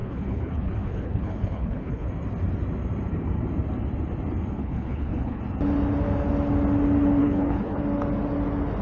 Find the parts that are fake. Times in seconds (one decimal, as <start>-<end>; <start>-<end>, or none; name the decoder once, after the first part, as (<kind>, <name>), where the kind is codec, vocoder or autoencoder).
0.0-2.1 (codec, HILCodec); 4.6-5.4; 7.2-7.8